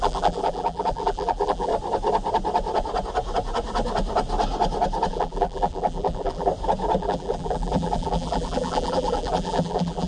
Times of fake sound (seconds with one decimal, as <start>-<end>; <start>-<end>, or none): 0.0-1.7; 5.1-6.5; 7.0-10.1